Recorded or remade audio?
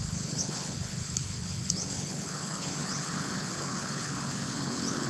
remade